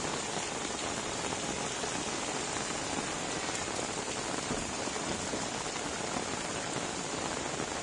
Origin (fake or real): real